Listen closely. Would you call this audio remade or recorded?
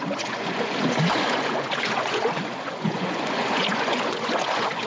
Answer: remade